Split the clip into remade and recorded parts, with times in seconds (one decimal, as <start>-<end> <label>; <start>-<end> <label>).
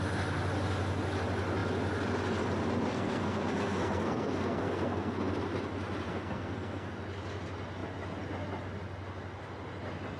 0.0-2.9 recorded; 2.9-5.3 remade; 5.3-6.1 recorded; 6.1-6.9 remade; 6.9-10.2 recorded